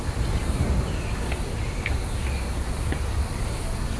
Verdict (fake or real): real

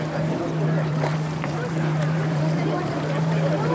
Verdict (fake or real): fake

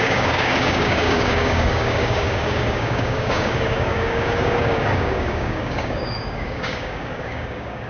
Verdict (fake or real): fake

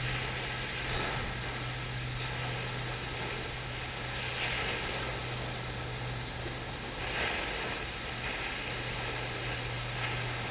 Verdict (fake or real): real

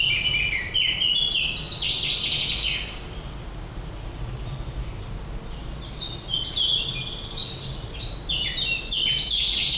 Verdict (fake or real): real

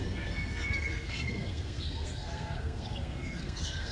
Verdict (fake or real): fake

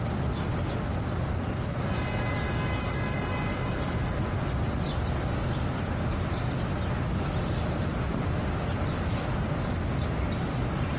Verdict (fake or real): real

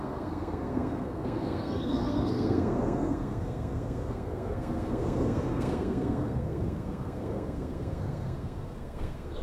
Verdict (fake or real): fake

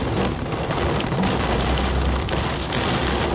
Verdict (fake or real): real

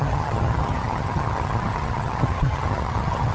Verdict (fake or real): fake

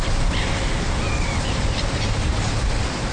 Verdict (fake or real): fake